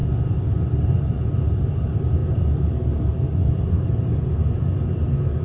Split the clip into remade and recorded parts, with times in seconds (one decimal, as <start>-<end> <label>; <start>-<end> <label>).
0.0-5.4 recorded